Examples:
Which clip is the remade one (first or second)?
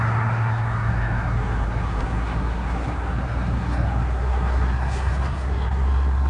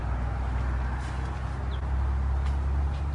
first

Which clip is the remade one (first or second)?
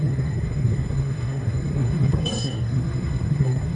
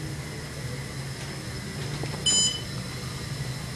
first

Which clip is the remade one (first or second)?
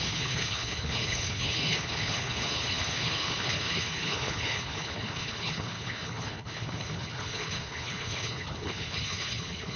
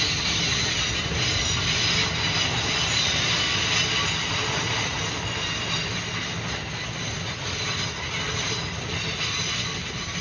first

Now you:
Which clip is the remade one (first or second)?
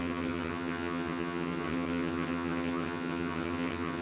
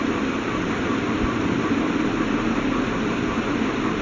first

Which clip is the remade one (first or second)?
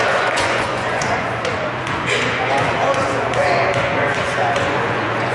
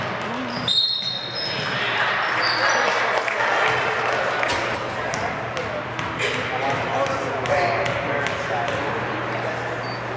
first